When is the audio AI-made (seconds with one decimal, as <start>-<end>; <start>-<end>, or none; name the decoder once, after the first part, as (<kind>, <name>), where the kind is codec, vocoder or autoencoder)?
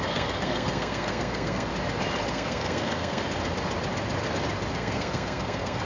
0.0-1.7 (codec, SNAC); 2.3-3.2; 4.7-5.9